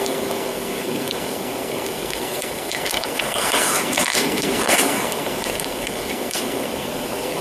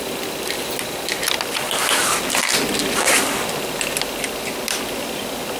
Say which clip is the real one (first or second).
second